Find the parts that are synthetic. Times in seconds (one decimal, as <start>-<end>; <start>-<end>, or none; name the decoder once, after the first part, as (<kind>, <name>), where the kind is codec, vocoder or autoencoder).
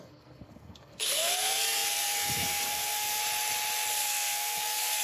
0.0-3.2 (codec, SNAC); 3.9-5.0